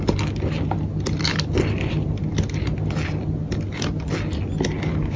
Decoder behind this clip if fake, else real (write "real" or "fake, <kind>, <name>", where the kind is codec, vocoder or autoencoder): real